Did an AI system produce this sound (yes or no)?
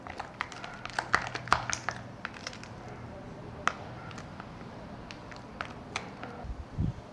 no